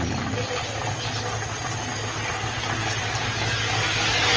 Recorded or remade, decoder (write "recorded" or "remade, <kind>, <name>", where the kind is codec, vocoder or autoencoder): recorded